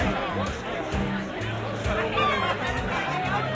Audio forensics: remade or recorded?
recorded